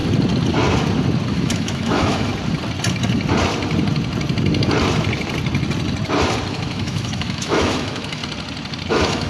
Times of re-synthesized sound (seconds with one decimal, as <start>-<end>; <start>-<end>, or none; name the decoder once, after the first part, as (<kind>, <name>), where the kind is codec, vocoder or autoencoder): 1.3-2.3 (autoencoder, DAC-VAE); 6.5-8.2; 8.9-9.3